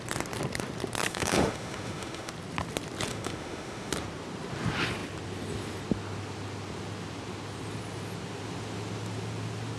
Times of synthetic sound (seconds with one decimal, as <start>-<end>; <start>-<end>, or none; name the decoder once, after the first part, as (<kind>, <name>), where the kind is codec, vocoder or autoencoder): 1.1-2.3 (autoencoder, DAC-VAE); 3.1-3.9